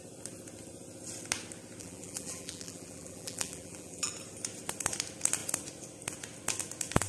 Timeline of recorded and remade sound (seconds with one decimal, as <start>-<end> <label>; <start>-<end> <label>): 0.0-1.8 recorded; 1.8-4.1 remade; 4.1-7.1 recorded